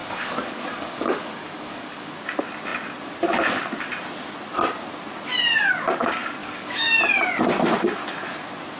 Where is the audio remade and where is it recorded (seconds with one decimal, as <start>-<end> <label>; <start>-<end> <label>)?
0.0-2.1 remade; 2.1-6.4 recorded; 6.4-7.0 remade; 7.0-8.8 recorded